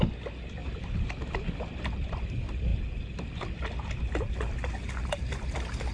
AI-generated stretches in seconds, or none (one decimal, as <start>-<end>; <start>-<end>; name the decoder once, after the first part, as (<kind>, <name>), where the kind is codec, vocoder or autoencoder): 0.6-2.3 (vocoder, BigVGAN v2)